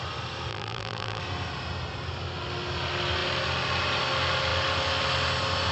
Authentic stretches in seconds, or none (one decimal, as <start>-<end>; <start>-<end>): 0.0-0.5; 1.2-5.7